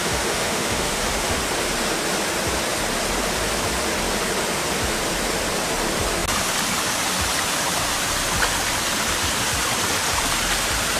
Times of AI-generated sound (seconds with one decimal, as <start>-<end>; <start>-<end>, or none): 0.0-1.4